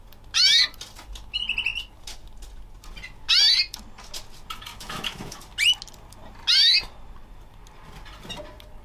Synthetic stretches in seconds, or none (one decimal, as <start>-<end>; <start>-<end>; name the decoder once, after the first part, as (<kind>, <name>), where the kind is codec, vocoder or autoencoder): 4.7-5.4 (autoencoder, DAC-VAE)

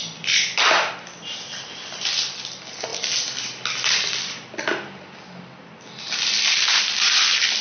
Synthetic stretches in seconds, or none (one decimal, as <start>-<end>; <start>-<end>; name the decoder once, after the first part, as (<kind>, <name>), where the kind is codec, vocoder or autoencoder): none

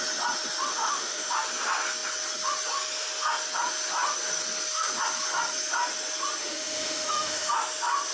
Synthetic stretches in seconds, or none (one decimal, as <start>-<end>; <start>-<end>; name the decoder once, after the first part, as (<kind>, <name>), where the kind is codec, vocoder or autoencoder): 0.7-1.3 (autoencoder, DAC-VAE); 6.4-7.5

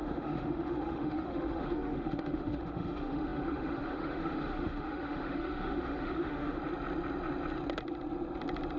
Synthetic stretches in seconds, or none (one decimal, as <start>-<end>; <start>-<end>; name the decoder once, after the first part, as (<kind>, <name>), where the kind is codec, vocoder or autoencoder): 0.0-6.6 (autoencoder, DAC-VAE)

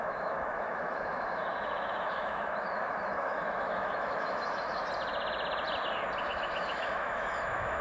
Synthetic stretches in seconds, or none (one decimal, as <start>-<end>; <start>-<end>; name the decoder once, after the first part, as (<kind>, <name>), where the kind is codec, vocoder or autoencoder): 0.0-4.8 (autoencoder, DAC-VAE); 6.2-7.8

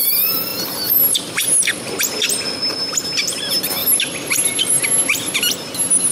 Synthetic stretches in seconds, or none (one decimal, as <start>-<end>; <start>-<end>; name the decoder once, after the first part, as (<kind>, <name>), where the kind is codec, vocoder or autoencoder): none